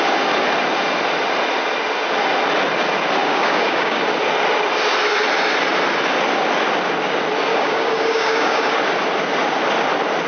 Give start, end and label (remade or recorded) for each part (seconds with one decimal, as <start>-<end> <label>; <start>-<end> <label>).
0.0-3.2 recorded; 3.2-4.0 remade; 4.0-7.5 recorded; 7.5-8.8 remade; 8.8-10.3 recorded